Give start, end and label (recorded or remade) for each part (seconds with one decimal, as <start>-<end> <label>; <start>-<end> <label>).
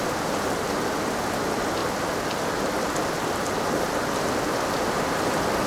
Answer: 0.0-5.7 recorded